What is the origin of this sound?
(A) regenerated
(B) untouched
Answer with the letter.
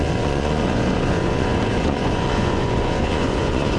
A